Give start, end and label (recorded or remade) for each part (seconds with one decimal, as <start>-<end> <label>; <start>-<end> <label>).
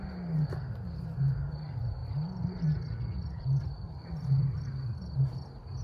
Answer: 0.0-2.0 recorded; 2.0-5.2 remade; 5.2-5.8 recorded